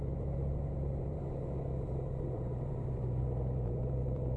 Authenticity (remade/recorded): remade